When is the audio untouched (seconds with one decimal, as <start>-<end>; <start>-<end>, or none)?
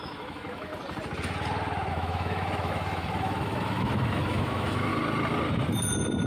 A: 0.7-1.9; 4.9-6.3